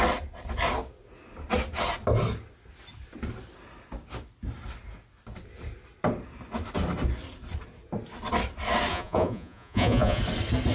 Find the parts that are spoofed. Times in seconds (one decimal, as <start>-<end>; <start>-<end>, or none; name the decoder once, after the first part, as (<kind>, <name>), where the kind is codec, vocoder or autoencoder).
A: 8.9-10.2 (vocoder, Vocos)